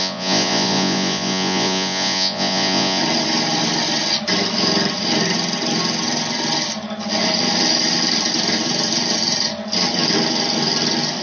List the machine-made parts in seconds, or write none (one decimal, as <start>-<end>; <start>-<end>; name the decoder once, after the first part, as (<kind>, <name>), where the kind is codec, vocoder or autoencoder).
0.0-3.0 (vocoder, Vocos)